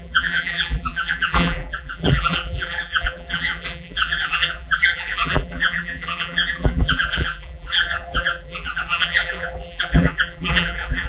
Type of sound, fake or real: fake